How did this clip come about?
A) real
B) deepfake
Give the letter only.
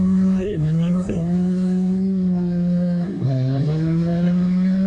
B